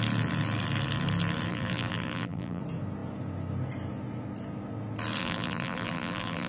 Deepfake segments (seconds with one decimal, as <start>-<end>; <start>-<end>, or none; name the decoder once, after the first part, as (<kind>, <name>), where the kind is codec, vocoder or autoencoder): 1.5-2.6 (vocoder, BigVGAN v2); 5.2-6.5